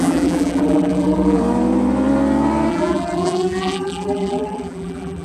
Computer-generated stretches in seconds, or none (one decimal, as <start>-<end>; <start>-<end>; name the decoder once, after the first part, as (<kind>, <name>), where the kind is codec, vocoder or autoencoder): 0.0-1.4 (vocoder, BigVGAN v2); 2.7-5.2